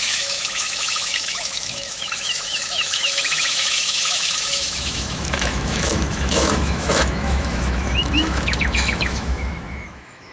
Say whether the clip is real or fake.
fake